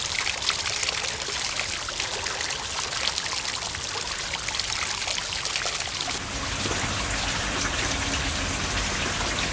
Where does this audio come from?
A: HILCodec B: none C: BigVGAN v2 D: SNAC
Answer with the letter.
B